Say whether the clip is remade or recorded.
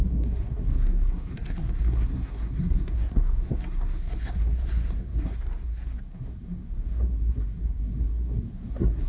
remade